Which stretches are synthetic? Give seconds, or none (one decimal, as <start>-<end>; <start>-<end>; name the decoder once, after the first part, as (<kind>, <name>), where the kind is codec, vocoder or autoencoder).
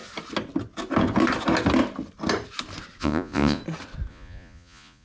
3.0-3.6 (vocoder, Vocos); 4.1-5.0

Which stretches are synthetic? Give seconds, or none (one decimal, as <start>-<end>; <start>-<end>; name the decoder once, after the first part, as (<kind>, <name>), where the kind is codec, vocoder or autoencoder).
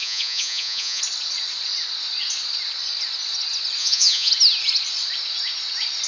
0.0-1.0 (vocoder, Vocos); 3.8-4.3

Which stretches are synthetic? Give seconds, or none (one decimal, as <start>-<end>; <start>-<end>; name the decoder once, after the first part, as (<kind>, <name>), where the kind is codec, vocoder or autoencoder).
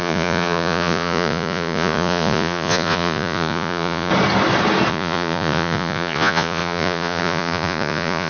0.0-4.1 (vocoder, Vocos); 4.9-8.3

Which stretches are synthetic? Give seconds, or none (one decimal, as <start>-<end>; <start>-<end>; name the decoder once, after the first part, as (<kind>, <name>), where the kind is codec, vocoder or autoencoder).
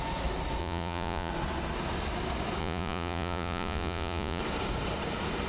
0.6-1.3 (vocoder, Vocos); 2.6-4.4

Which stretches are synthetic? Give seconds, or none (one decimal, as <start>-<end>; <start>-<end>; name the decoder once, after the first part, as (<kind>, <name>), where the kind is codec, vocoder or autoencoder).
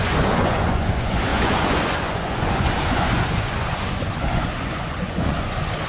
0.0-5.9 (vocoder, Vocos)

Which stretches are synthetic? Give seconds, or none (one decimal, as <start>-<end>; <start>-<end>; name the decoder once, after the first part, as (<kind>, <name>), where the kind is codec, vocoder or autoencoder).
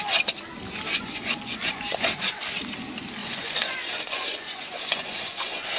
0.9-2.4 (vocoder, Vocos); 3.2-5.8